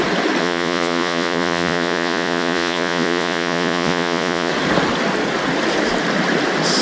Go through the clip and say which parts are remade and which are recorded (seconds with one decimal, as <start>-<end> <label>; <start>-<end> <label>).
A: 0.0-0.4 recorded; 0.4-4.5 remade; 4.5-6.8 recorded